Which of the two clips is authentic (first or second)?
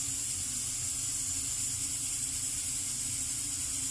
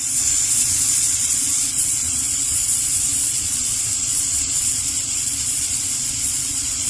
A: first